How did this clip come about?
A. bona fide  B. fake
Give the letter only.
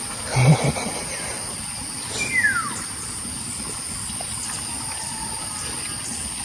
A